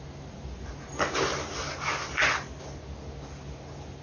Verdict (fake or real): real